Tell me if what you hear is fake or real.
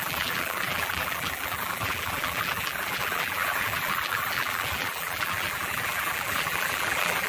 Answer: fake